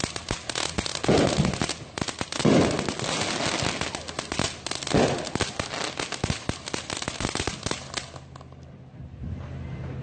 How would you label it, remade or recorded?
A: recorded